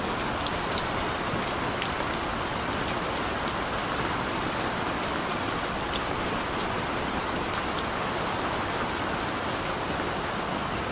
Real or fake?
real